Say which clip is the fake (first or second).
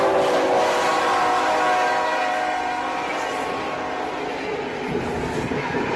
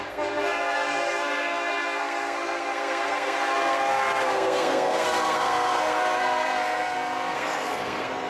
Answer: second